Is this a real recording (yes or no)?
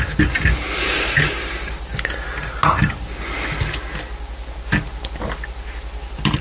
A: yes